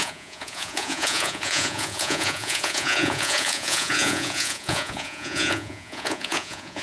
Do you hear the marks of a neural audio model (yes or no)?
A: yes